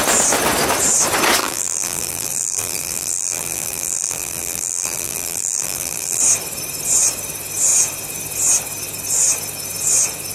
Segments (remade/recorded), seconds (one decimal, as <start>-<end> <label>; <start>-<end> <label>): 0.0-1.4 recorded; 1.4-6.2 remade; 6.2-10.3 recorded